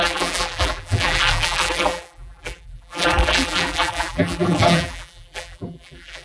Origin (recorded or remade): remade